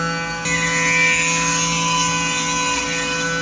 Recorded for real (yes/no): yes